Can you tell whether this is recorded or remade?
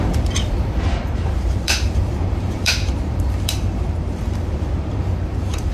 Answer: remade